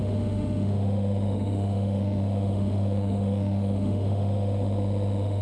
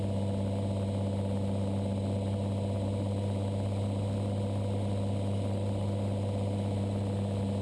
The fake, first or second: first